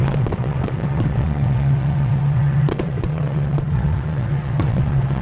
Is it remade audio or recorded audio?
remade